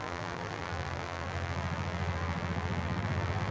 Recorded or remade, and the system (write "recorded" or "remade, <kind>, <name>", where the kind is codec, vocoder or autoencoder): remade, vocoder, BigVGAN v2